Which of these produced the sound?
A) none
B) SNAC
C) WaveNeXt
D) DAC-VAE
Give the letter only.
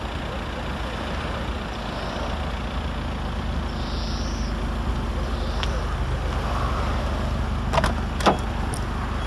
A